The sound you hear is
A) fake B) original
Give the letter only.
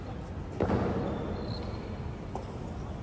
B